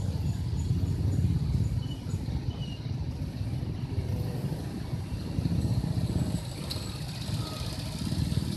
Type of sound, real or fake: real